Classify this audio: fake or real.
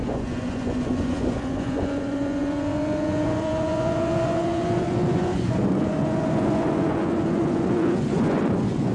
fake